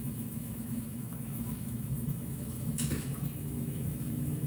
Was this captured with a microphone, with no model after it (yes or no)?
no